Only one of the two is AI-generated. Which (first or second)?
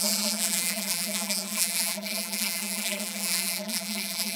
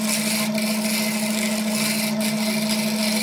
first